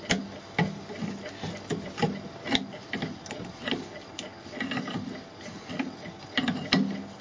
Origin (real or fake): real